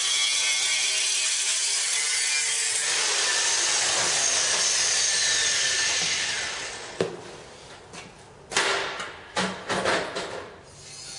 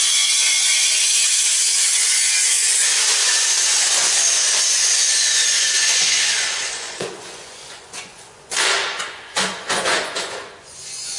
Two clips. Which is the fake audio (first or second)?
second